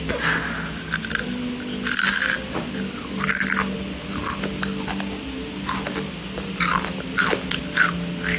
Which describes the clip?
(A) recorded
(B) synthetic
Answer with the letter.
A